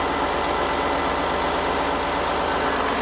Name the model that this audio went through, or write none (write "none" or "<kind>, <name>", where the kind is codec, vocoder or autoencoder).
none